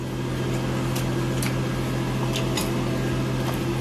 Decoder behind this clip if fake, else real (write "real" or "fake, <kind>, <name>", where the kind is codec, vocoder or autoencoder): real